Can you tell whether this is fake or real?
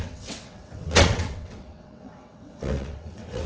fake